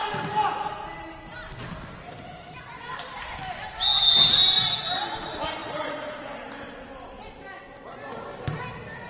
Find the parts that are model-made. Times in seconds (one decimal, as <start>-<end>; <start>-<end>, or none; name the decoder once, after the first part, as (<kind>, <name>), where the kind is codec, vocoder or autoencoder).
5.6-6.5 (vocoder, Vocos)